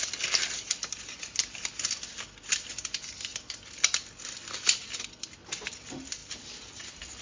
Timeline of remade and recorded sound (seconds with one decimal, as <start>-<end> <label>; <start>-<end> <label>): 0.0-7.2 recorded